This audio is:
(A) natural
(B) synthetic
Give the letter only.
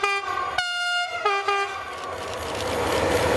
A